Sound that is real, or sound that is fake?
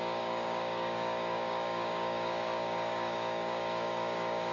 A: fake